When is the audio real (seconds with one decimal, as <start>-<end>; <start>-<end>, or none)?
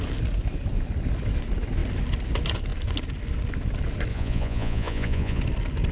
0.0-4.1; 5.4-5.9